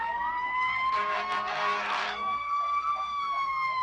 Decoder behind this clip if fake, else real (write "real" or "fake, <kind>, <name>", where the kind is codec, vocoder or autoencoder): fake, codec, SNAC